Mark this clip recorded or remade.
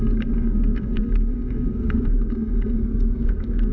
remade